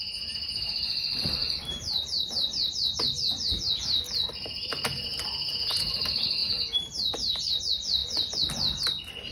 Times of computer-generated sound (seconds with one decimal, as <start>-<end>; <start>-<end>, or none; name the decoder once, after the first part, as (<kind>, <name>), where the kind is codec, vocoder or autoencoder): 1.4-3.6 (vocoder, BigVGAN v2); 6.4-7.6